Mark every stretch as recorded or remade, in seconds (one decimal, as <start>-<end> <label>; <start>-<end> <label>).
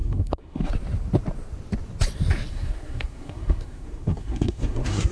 0.0-0.7 remade; 0.7-2.5 recorded; 2.5-5.1 remade